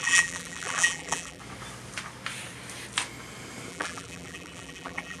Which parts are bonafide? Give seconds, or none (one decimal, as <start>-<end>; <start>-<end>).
1.4-3.7